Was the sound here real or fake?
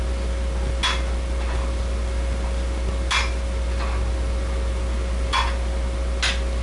real